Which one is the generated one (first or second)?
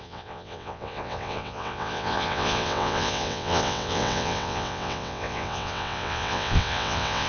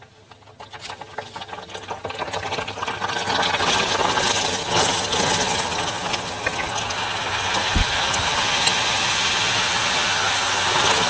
first